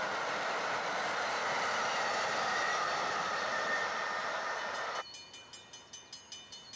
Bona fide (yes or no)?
yes